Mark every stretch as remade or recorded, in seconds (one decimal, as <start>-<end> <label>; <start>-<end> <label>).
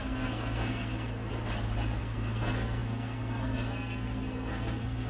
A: 0.0-1.3 remade; 1.3-2.0 recorded; 2.0-5.1 remade